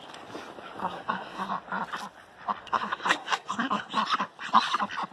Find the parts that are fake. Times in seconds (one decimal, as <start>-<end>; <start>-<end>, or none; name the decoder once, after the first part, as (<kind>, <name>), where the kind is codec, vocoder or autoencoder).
0.8-1.5 (codec, SNAC); 2.6-3.9